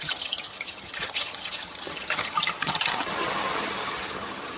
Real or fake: fake